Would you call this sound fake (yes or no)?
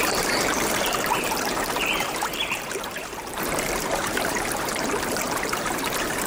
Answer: yes